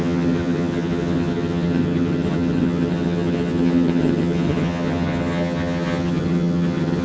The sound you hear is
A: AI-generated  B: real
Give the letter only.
A